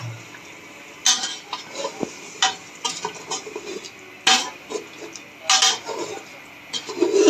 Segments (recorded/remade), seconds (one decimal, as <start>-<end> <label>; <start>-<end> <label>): 0.0-7.3 recorded